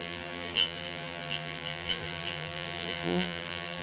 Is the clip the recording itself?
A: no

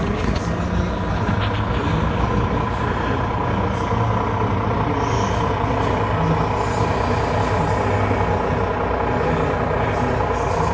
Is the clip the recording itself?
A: yes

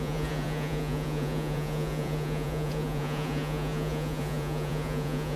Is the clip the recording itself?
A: no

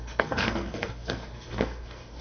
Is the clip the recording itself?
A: no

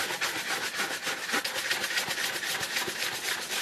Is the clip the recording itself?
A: yes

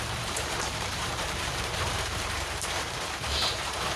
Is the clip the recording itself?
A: no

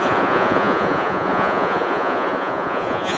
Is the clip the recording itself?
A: no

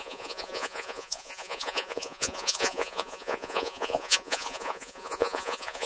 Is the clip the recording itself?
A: no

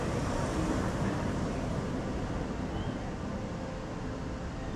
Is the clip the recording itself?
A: yes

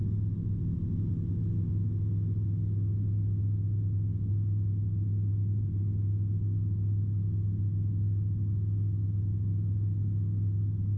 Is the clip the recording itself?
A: yes